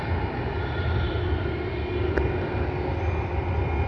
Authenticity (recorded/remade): recorded